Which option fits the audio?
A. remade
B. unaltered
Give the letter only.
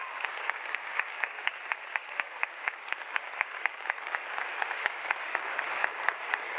A